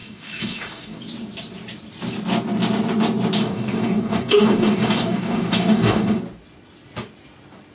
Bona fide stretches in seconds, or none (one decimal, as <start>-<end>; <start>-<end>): 1.0-3.4; 6.2-7.7